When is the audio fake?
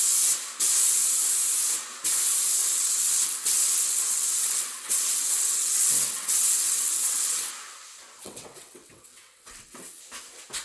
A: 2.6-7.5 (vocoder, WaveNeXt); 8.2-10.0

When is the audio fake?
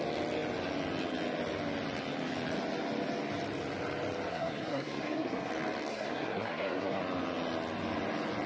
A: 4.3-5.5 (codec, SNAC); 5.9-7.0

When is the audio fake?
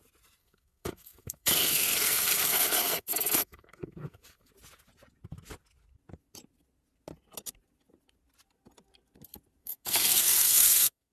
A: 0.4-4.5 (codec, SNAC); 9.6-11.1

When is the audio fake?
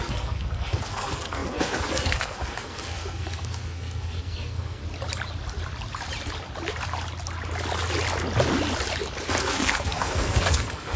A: 0.0-4.8 (codec, SNAC); 9.3-11.0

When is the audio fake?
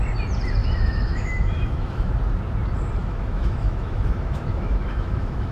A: 0.6-2.1 (autoencoder, DAC-VAE); 3.0-5.5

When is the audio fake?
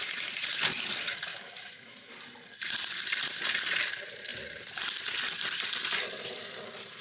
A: 1.3-2.1 (autoencoder, DAC-VAE)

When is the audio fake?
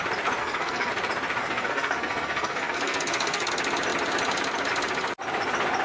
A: 0.4-0.9 (codec, SNAC); 1.4-3.5